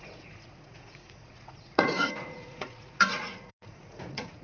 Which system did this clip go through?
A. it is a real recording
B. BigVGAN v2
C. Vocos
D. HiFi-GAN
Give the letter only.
C